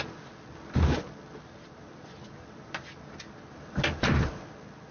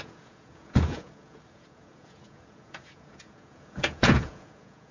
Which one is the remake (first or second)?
second